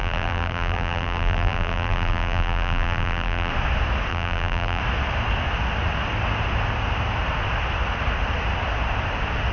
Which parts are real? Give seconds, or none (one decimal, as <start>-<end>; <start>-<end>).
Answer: 3.5-4.1; 4.8-9.5